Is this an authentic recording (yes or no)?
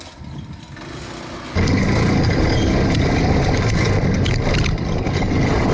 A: yes